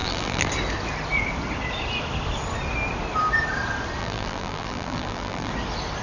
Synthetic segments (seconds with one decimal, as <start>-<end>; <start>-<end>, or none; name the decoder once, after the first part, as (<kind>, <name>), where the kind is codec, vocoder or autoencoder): 0.0-0.5 (vocoder, BigVGAN v2); 4.0-5.5